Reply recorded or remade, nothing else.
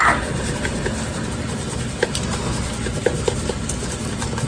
recorded